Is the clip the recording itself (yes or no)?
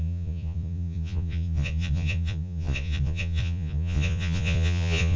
no